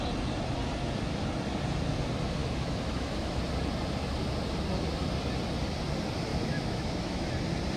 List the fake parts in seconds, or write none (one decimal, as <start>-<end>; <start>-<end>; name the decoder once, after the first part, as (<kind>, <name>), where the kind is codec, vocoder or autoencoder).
2.4-3.4 (autoencoder, DAC-VAE); 6.3-7.3